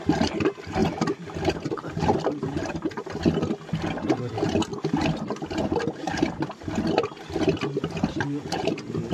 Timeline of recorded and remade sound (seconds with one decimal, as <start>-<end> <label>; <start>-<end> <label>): 0.0-9.1 recorded